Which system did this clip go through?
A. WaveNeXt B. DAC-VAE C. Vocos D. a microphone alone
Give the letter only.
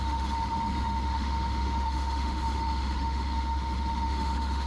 B